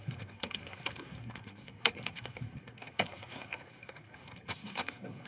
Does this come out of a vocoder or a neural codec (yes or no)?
yes